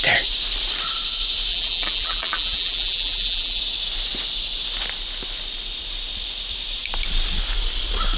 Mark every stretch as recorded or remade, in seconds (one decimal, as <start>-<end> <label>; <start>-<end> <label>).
0.0-1.5 recorded; 1.5-3.6 remade; 3.6-8.2 recorded